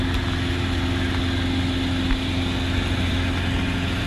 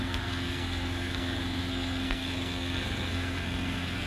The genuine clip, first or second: first